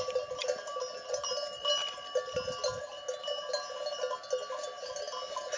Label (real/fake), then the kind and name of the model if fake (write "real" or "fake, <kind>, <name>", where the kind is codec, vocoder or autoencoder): real